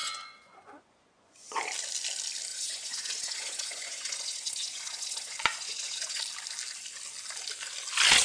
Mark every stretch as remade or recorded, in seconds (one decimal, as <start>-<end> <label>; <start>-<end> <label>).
0.0-1.6 remade; 1.6-2.5 recorded; 2.5-6.2 remade; 6.2-8.2 recorded